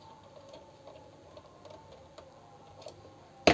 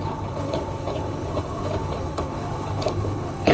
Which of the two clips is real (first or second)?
first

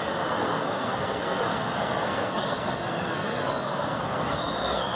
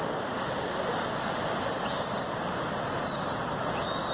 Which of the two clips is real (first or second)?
second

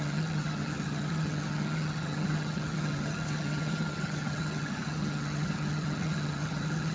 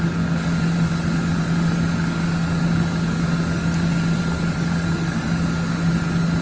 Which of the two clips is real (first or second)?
second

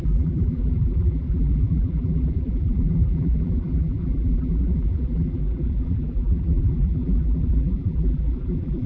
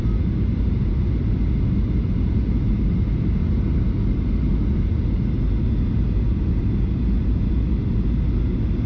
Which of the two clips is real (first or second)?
second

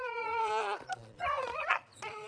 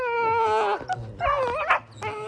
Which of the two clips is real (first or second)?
second